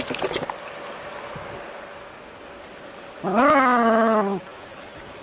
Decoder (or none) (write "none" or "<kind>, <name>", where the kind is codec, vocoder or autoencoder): none